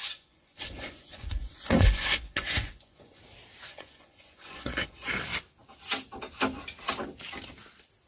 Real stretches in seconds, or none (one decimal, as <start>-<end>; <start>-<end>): 3.2-3.7; 5.1-8.1